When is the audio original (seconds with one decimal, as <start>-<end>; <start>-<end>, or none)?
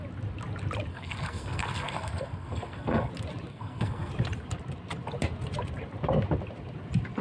0.0-0.9; 3.1-3.5; 4.1-7.2